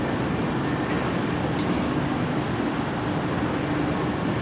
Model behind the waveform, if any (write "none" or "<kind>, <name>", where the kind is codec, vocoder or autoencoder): none